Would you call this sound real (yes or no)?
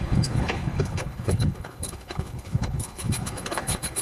no